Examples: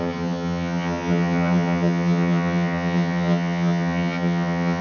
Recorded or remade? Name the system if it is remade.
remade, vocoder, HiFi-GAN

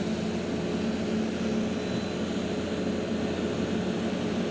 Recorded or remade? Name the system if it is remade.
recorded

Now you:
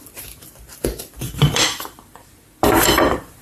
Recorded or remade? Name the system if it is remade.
remade, vocoder, BigVGAN v2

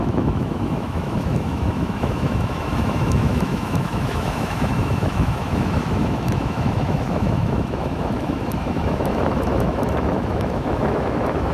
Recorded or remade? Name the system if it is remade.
remade, autoencoder, DAC-VAE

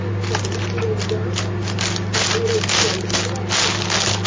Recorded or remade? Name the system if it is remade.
recorded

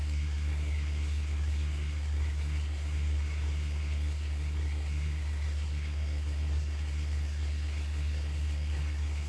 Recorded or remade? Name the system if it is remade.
remade, codec, SNAC